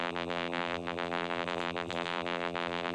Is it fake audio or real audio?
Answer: fake